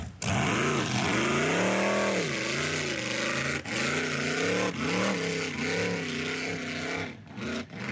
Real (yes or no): yes